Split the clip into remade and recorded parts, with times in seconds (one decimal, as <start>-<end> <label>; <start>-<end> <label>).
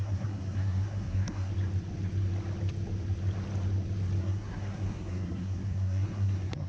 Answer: 0.0-1.5 remade; 1.5-4.2 recorded; 4.2-6.7 remade